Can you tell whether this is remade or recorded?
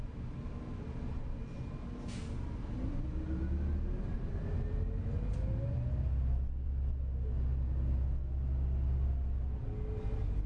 recorded